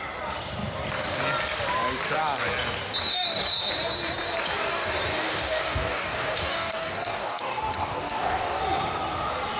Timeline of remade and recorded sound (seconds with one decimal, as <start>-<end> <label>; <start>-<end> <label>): 0.0-3.0 recorded; 3.0-3.7 remade; 3.7-5.1 recorded; 5.1-8.6 remade; 8.6-9.6 recorded